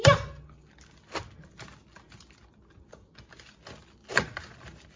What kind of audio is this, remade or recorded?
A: recorded